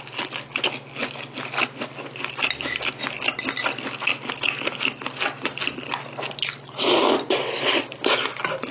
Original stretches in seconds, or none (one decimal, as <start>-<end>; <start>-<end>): 0.0-8.7